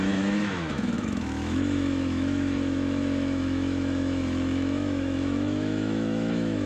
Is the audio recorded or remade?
remade